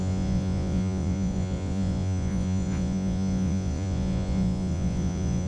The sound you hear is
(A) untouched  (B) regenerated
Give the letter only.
B